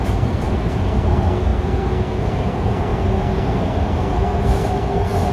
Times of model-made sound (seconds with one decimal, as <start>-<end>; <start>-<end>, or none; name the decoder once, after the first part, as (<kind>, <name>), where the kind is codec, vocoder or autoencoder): 0.0-5.3 (codec, SNAC)